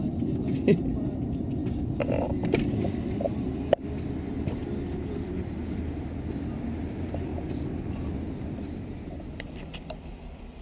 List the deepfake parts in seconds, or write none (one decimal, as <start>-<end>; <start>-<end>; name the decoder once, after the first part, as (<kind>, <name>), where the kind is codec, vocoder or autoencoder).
0.0-1.6 (vocoder, BigVGAN v2); 2.3-4.6; 5.4-7.3; 7.8-10.6

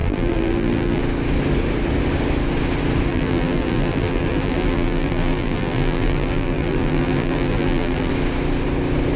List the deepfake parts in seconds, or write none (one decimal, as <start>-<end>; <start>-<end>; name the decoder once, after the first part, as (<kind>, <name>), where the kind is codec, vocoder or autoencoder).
0.0-1.0 (vocoder, BigVGAN v2); 3.1-8.1

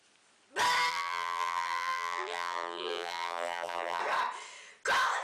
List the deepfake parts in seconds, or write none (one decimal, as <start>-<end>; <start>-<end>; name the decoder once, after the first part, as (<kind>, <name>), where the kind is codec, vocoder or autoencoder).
0.9-4.0 (vocoder, BigVGAN v2)